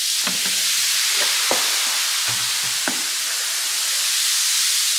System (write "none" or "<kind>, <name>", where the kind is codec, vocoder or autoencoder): none